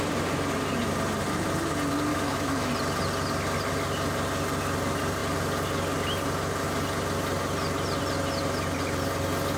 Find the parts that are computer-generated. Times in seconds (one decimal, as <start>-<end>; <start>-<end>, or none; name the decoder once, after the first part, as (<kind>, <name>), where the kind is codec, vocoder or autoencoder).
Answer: 2.1-2.7 (autoencoder, DAC-VAE)